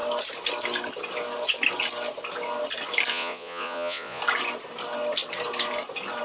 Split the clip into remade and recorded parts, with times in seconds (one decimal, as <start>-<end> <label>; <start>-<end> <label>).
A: 0.0-3.1 recorded; 3.1-4.2 remade; 4.2-6.2 recorded